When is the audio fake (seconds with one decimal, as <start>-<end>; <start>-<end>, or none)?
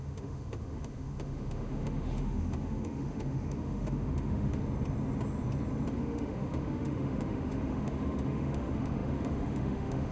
0.0-4.6; 5.9-10.1